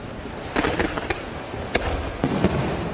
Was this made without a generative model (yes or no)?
yes